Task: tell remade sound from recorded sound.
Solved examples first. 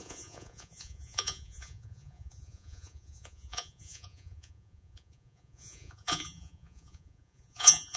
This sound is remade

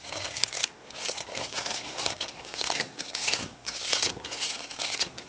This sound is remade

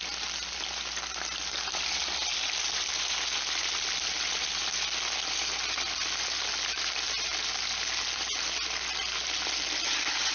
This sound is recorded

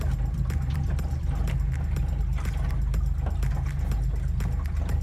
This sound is recorded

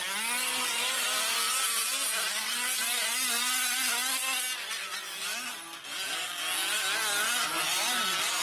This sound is recorded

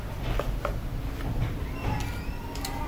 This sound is recorded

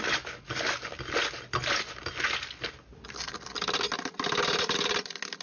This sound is recorded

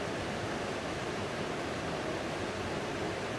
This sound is recorded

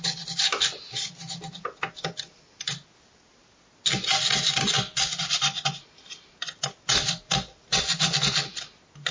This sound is recorded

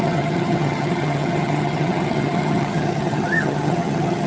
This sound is remade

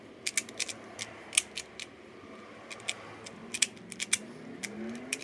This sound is recorded